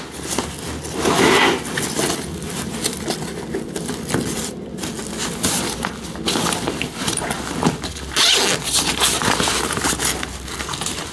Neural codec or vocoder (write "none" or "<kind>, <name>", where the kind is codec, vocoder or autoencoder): none